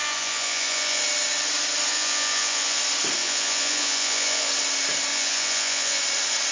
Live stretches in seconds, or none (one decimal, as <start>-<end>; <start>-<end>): 1.0-1.9; 2.8-3.2; 4.5-5.1; 6.0-6.5